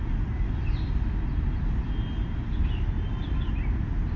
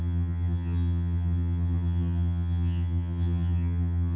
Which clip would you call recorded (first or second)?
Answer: first